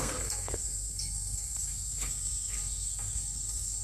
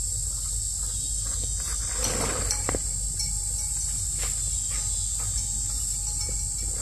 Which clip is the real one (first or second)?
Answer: second